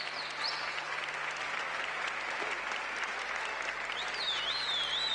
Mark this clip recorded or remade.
recorded